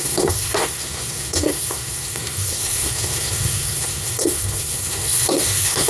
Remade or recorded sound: remade